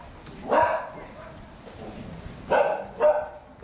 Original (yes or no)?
yes